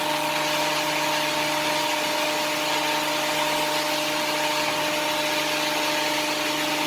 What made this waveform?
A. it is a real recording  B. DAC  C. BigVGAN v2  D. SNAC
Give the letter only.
A